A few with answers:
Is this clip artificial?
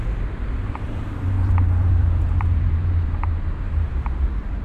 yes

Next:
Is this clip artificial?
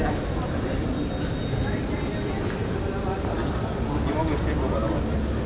no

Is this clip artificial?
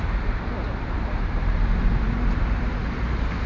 yes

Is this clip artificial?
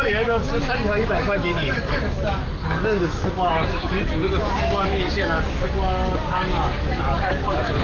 yes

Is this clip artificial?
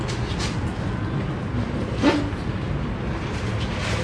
no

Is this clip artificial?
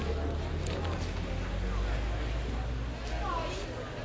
no